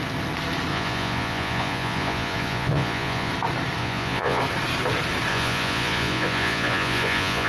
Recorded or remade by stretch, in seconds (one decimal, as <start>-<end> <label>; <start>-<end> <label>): 0.0-0.7 recorded; 0.7-3.3 remade; 3.3-3.8 recorded; 3.8-4.4 remade; 4.4-5.3 recorded; 5.3-7.5 remade